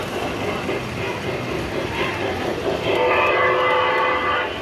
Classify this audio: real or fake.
real